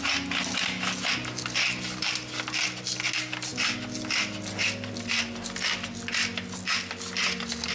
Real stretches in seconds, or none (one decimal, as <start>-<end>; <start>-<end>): 0.0-7.7